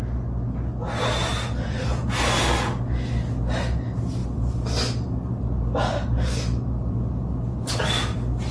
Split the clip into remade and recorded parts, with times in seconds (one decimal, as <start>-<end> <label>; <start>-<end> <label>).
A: 0.0-1.3 recorded; 1.3-2.4 remade; 2.4-8.5 recorded